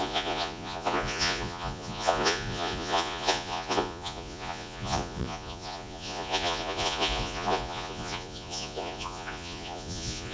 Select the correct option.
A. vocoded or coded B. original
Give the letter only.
A